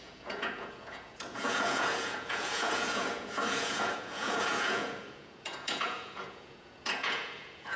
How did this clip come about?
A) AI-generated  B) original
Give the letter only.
A